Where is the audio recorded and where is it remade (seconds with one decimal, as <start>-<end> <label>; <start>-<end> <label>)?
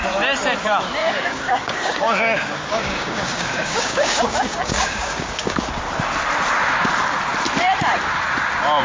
0.0-1.0 recorded; 1.0-5.7 remade; 5.7-8.8 recorded